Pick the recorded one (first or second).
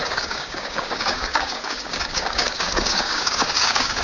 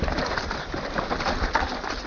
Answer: second